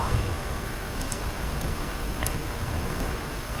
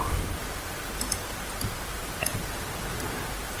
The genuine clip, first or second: second